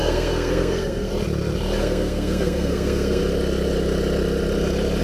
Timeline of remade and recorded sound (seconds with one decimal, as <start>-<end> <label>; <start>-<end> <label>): 0.0-1.1 remade; 1.1-1.8 recorded; 1.8-3.2 remade; 3.2-5.0 recorded